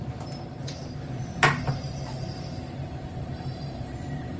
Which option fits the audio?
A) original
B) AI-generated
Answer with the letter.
B